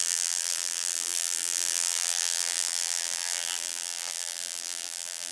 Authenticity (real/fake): fake